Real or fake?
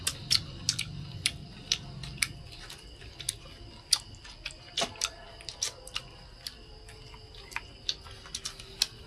real